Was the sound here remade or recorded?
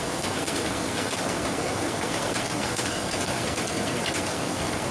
remade